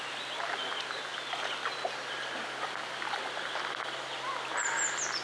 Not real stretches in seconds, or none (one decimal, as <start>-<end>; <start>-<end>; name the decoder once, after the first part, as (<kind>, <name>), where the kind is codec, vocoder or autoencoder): none